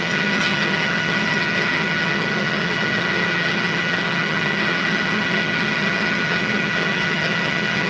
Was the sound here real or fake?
fake